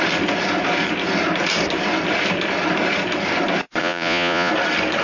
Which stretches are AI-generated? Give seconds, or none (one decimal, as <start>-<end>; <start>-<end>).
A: 3.8-4.5